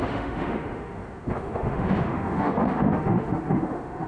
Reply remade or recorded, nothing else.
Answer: remade